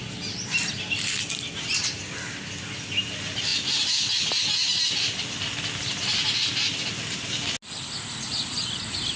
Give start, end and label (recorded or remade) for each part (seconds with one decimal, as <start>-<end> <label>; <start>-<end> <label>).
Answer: 0.0-9.2 recorded